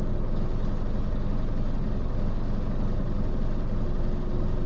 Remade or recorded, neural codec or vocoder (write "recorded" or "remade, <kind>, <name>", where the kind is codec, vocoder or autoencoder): recorded